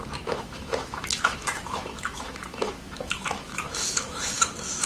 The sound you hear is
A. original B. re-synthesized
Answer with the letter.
B